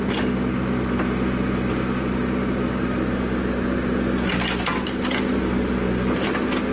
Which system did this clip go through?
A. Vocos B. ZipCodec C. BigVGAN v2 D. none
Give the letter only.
D